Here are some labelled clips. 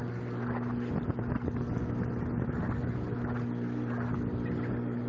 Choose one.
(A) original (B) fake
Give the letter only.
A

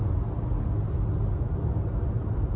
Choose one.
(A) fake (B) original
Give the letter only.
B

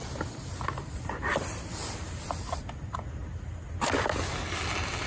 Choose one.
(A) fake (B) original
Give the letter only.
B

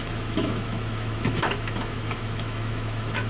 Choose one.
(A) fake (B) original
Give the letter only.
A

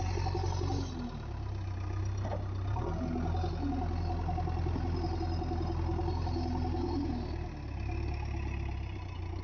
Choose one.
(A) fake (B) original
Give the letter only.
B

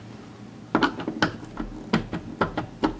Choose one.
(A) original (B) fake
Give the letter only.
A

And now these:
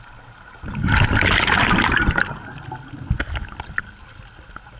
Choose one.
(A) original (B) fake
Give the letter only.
A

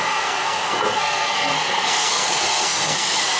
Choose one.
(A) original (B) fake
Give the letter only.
B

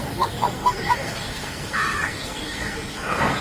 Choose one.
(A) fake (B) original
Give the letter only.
A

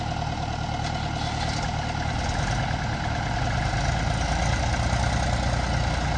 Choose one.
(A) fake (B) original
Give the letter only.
B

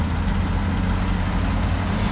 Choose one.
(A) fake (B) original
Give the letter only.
B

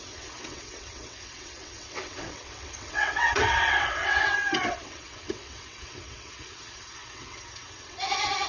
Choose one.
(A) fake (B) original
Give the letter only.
A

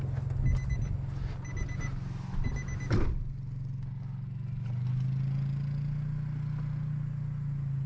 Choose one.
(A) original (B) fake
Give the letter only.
A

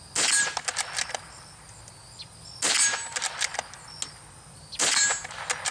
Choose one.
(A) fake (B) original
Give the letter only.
B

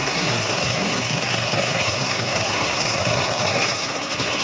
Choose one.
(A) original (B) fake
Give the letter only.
B